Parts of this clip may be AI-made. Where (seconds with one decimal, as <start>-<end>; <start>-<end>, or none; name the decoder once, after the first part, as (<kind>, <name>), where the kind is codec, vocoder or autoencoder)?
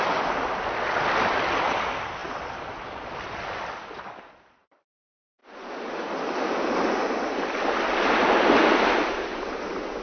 none